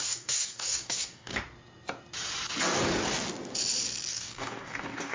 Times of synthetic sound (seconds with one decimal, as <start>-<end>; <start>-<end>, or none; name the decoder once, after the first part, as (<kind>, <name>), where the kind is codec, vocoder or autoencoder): 0.0-1.3 (codec, DAC); 4.1-5.1